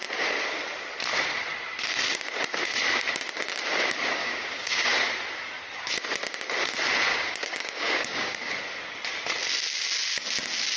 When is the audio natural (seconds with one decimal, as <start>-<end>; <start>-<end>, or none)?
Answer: 0.0-4.2; 4.9-7.1; 8.5-10.8